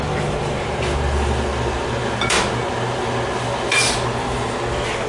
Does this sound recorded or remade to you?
recorded